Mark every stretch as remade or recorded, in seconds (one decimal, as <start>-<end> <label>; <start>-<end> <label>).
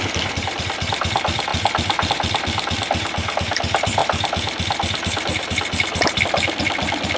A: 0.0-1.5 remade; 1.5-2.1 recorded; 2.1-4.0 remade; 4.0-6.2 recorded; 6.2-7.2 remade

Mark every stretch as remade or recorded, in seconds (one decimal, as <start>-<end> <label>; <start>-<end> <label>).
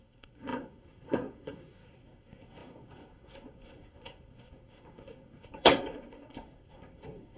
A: 0.0-7.4 remade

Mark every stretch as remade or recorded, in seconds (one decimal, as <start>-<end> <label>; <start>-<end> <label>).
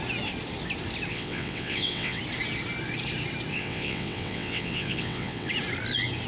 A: 0.0-1.1 recorded; 1.1-2.2 remade; 2.2-3.5 recorded; 3.5-5.5 remade; 5.5-6.3 recorded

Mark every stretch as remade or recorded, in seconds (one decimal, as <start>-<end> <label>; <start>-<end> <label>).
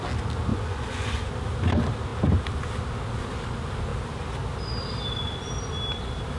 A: 0.0-0.5 recorded; 0.5-1.3 remade; 1.3-6.4 recorded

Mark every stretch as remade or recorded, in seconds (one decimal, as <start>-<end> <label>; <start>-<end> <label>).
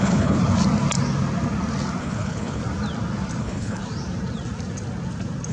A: 0.0-0.4 remade; 0.4-2.0 recorded; 2.0-2.6 remade; 2.6-3.4 recorded; 3.4-3.8 remade; 3.8-5.5 recorded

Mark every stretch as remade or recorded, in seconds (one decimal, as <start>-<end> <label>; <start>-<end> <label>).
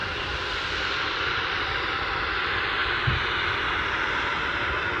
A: 0.0-2.2 remade; 2.2-5.0 recorded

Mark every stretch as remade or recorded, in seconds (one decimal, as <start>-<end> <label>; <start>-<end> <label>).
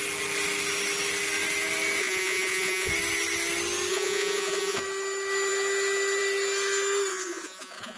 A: 0.0-2.0 recorded; 2.0-2.9 remade; 2.9-3.9 recorded; 3.9-4.8 remade; 4.8-7.1 recorded; 7.1-8.0 remade